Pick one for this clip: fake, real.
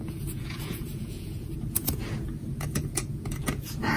fake